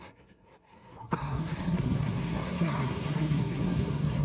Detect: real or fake fake